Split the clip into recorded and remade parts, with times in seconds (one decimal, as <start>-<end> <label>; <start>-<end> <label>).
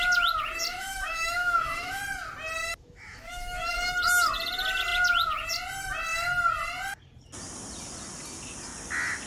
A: 0.0-0.7 recorded; 0.7-2.0 remade; 2.0-2.7 recorded; 2.7-3.9 remade; 3.9-9.3 recorded